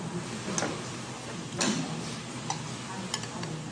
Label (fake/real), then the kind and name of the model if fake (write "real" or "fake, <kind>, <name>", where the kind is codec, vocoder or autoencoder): real